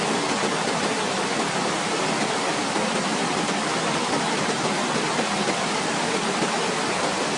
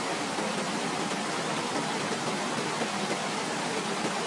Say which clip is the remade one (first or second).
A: first